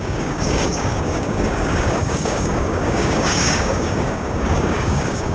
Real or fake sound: fake